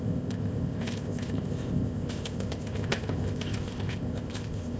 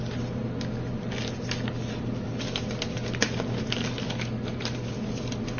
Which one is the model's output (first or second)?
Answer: first